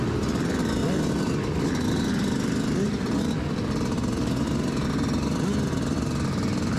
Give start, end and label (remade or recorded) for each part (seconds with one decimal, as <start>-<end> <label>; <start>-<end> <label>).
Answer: 0.0-6.8 recorded